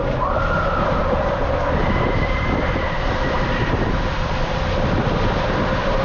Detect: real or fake fake